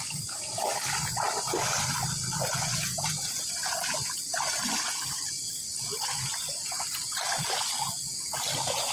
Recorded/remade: recorded